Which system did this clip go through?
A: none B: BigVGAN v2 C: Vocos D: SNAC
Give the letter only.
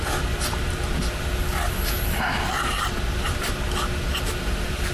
A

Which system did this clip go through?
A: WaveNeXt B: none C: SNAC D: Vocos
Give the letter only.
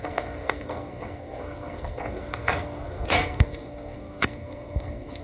C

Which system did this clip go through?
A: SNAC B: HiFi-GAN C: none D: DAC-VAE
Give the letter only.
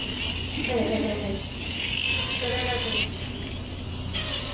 C